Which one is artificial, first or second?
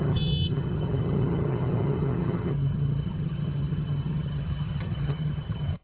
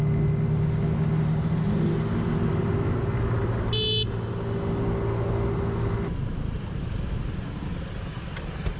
first